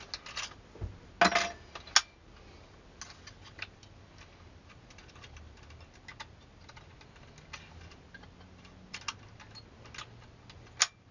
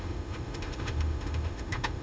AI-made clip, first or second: second